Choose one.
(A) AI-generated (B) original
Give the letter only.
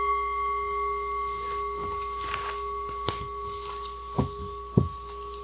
B